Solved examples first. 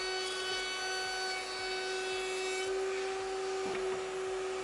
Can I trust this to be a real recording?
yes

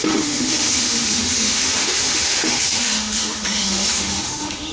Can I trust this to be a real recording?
no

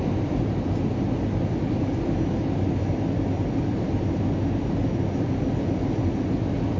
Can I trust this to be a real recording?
yes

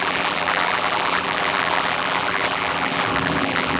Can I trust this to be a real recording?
no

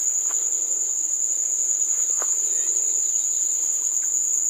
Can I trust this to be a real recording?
yes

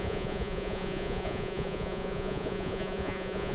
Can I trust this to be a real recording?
no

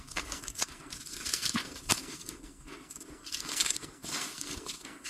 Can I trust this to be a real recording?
no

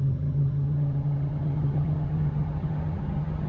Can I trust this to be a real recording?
no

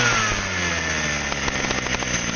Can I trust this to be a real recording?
yes